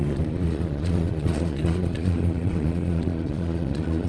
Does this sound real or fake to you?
fake